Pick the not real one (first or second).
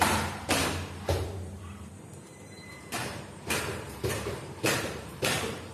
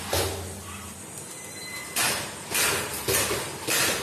first